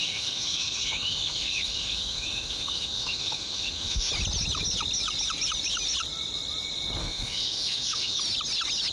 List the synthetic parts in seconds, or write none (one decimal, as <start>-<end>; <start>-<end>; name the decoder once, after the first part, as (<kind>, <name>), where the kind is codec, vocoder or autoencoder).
0.0-4.1 (autoencoder, DAC-VAE); 7.0-8.2